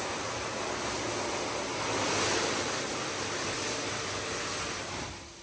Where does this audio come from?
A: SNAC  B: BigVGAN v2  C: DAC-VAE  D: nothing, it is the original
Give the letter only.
D